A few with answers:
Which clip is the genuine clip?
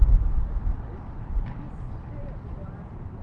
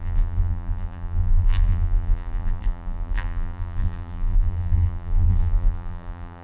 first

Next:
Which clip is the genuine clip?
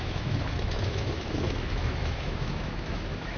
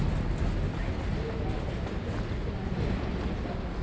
second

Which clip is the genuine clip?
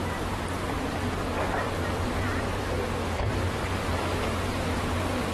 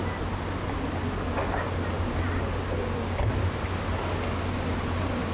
second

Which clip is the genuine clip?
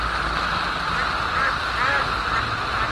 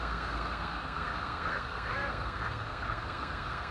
first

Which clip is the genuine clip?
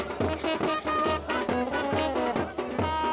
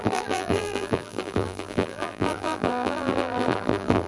first